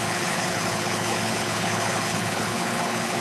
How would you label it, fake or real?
fake